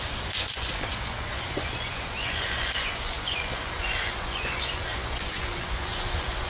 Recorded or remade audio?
remade